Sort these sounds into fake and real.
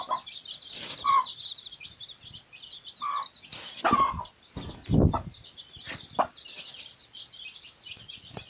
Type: real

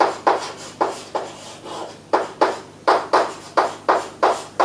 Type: real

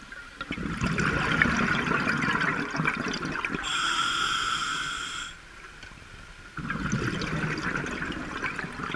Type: real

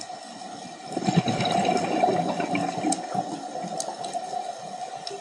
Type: real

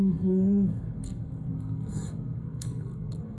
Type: fake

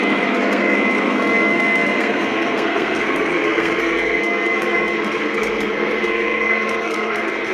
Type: fake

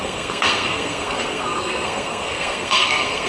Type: fake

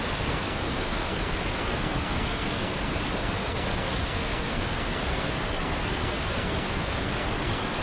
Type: fake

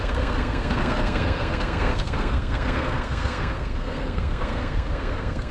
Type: fake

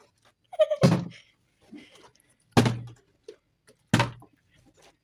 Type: real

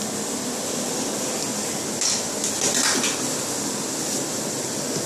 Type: real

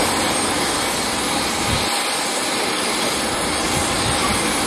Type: real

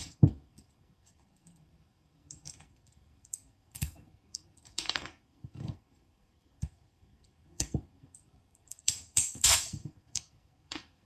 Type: fake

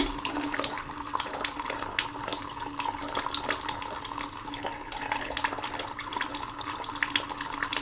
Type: real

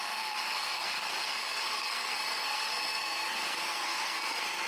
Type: fake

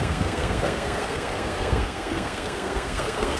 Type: fake